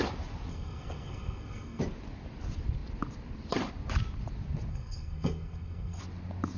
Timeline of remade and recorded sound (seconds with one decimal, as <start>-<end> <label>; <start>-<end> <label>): 0.0-0.5 recorded; 0.5-1.8 remade; 1.8-4.7 recorded; 4.7-6.0 remade; 6.0-6.6 recorded